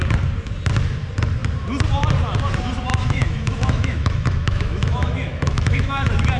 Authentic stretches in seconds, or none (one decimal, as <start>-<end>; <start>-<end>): 0.0-2.9; 5.9-6.4